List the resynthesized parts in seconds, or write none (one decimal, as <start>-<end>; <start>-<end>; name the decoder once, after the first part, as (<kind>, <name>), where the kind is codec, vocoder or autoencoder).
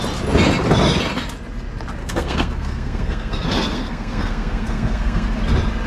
2.0-5.4 (codec, SNAC)